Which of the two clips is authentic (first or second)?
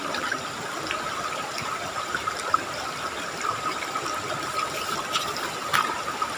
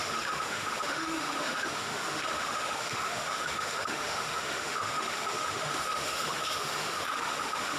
first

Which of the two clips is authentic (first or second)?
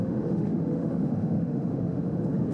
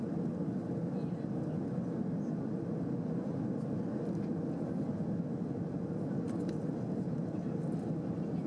second